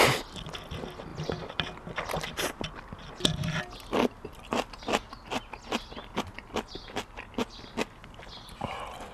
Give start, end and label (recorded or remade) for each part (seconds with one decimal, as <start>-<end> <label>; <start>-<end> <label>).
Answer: 0.0-1.1 recorded; 1.1-2.0 remade; 2.0-9.1 recorded